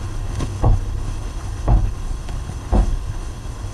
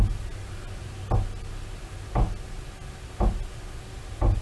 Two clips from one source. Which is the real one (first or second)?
second